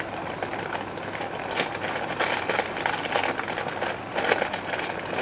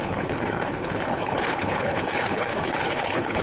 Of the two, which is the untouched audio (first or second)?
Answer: first